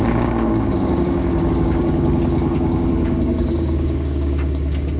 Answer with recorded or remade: remade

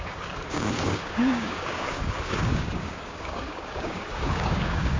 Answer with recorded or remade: remade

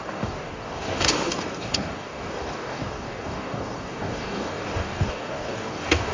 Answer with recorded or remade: remade